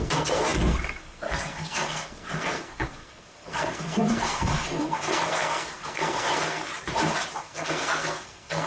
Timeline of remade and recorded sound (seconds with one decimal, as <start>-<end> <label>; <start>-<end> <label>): 0.0-6.7 remade; 6.7-7.4 recorded; 7.4-8.7 remade